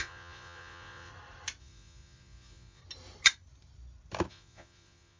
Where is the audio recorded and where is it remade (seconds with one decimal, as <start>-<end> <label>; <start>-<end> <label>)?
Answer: 0.0-1.1 remade; 1.1-1.6 recorded; 1.6-2.8 remade; 2.8-4.3 recorded; 4.3-5.2 remade